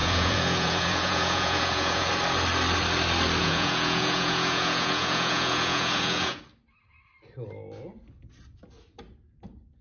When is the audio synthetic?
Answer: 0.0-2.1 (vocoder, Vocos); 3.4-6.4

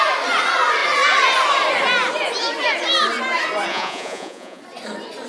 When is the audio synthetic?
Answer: 3.7-4.6 (vocoder, Vocos)

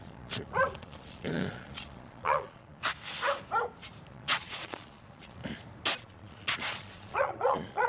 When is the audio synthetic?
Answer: 0.0-2.8 (vocoder, Vocos); 4.1-5.4; 6.0-7.9

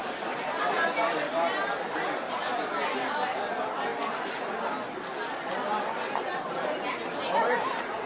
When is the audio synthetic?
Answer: none

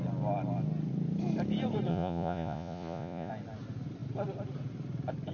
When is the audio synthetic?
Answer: 1.9-3.3 (vocoder, Vocos)

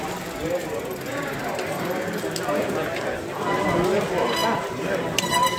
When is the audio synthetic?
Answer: none

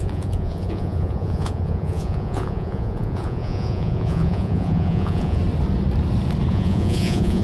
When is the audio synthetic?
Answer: 0.0-5.4 (vocoder, Vocos); 6.5-7.4